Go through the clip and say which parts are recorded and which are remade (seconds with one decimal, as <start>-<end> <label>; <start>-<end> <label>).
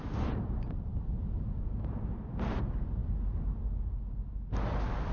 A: 0.0-5.1 recorded